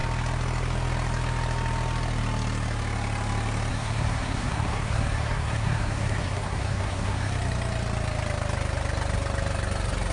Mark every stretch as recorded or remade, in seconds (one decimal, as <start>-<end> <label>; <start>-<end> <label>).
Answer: 0.0-3.7 recorded; 3.7-7.3 remade; 7.3-10.1 recorded